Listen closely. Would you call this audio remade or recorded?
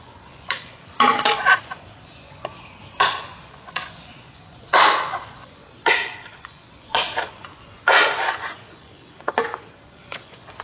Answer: remade